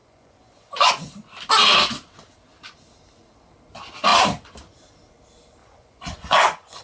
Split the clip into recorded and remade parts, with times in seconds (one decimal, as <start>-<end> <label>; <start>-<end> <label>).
0.0-0.9 remade; 0.9-5.6 recorded; 5.6-6.8 remade